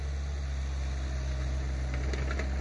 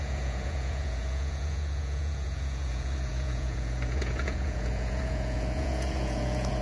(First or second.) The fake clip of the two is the second